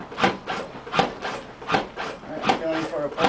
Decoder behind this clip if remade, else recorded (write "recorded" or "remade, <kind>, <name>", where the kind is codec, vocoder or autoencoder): recorded